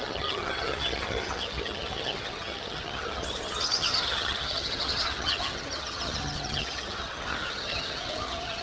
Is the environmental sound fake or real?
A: fake